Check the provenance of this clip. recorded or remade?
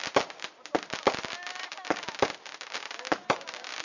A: recorded